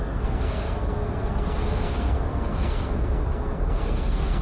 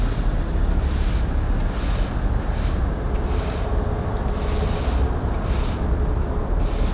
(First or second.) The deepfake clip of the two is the first